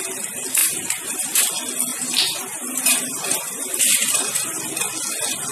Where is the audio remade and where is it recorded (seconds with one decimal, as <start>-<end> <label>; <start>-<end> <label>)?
0.0-0.6 recorded; 0.6-1.4 remade; 1.4-1.9 recorded; 1.9-4.7 remade; 4.7-5.5 recorded